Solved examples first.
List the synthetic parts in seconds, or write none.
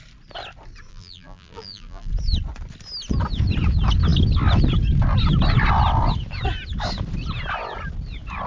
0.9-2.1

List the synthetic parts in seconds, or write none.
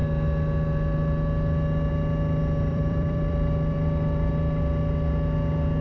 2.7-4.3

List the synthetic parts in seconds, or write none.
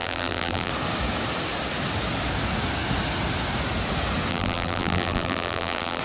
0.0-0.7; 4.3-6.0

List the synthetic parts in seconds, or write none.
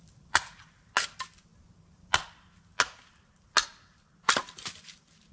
3.7-4.4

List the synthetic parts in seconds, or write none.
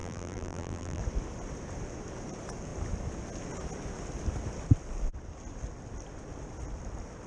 0.0-1.0